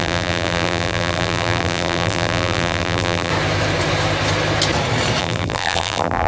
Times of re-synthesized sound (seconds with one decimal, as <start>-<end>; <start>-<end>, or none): 0.0-3.3; 5.2-6.3